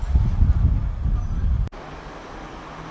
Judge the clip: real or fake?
real